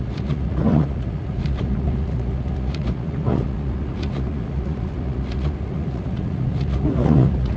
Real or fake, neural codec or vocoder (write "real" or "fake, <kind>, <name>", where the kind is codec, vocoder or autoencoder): fake, vocoder, Vocos